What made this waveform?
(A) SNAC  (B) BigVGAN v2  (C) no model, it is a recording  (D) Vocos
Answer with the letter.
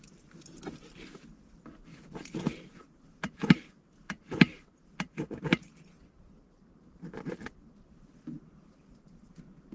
C